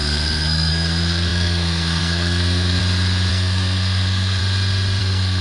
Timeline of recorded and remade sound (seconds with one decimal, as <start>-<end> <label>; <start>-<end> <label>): 0.0-2.8 remade; 2.8-3.3 recorded; 3.3-4.4 remade; 4.4-5.0 recorded; 5.0-5.4 remade